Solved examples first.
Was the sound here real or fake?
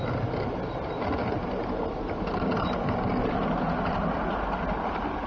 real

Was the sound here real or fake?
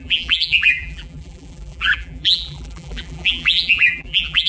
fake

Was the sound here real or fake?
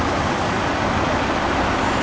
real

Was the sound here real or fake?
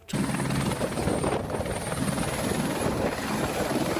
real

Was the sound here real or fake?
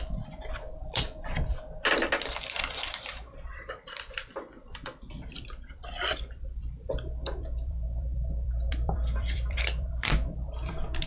fake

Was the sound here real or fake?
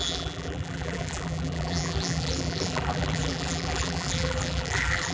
fake